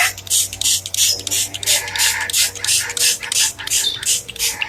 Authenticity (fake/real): real